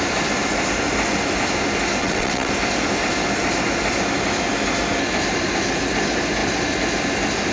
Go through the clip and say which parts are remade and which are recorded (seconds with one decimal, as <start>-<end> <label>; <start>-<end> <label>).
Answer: 0.0-2.0 recorded; 2.0-2.5 remade; 2.5-7.5 recorded